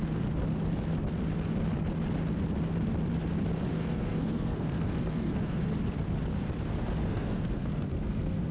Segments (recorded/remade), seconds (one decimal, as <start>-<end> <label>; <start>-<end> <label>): 0.0-3.7 recorded; 3.7-5.7 remade; 5.7-7.1 recorded; 7.1-8.5 remade